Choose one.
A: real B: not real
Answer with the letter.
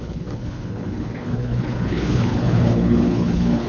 B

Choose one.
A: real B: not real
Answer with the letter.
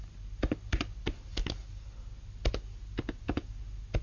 A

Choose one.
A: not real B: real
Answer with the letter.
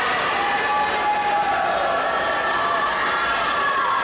B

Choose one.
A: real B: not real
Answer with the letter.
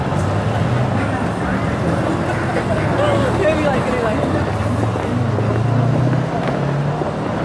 A